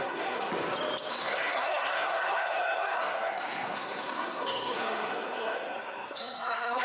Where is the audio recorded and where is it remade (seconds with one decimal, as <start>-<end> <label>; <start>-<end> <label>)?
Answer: 0.0-0.5 remade; 0.5-1.1 recorded; 1.1-6.8 remade